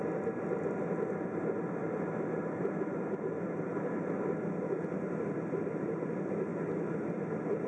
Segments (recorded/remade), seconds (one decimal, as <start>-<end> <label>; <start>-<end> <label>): 0.0-7.7 recorded